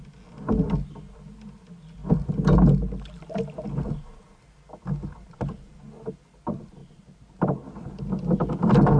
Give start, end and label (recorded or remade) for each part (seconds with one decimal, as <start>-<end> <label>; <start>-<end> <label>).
0.0-6.8 recorded; 6.8-7.9 remade; 7.9-9.0 recorded